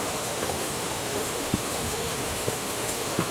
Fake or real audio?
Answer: fake